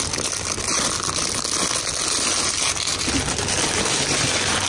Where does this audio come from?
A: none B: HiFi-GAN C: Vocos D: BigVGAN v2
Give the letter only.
A